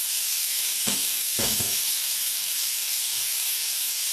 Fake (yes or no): yes